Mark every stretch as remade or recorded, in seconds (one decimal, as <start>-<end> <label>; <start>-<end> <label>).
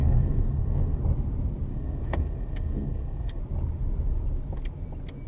0.0-1.0 remade; 1.0-1.7 recorded; 1.7-3.4 remade; 3.4-5.3 recorded